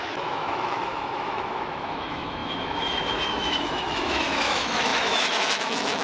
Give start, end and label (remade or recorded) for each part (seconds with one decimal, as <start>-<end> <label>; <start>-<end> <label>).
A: 0.0-6.0 remade